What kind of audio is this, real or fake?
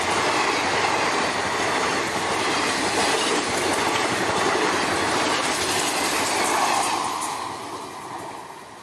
real